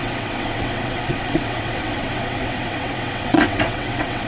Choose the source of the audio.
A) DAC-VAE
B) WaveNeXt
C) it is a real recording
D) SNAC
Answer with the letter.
B